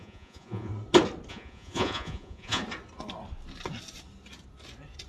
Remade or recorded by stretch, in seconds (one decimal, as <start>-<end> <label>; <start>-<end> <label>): 0.0-0.7 remade; 0.7-1.3 recorded; 1.3-2.6 remade; 2.6-5.1 recorded